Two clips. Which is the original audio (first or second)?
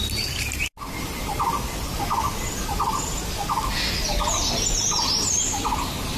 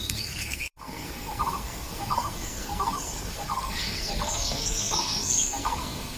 first